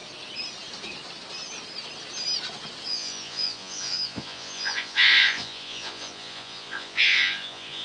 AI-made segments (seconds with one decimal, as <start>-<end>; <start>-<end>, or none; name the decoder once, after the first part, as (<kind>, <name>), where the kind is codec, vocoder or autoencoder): 2.9-7.8 (vocoder, Vocos)